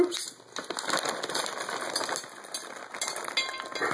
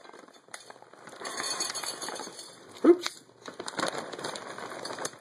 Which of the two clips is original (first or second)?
first